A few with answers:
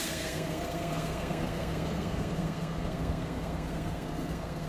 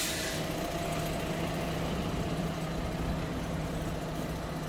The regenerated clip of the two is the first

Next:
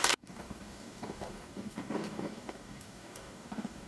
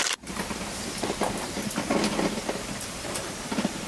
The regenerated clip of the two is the first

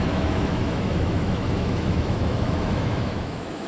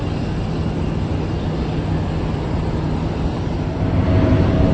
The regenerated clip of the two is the first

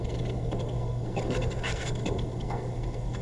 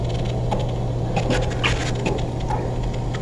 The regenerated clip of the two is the first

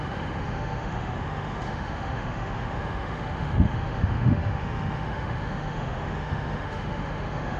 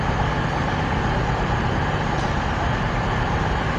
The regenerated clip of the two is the first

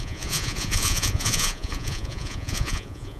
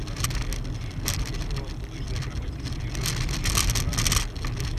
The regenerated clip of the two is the first